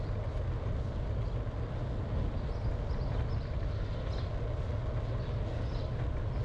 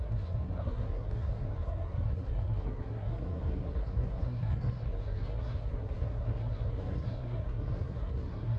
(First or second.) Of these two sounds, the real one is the first